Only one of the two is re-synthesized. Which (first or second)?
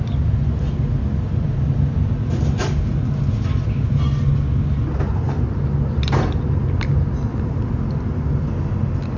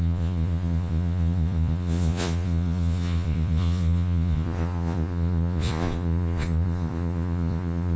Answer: second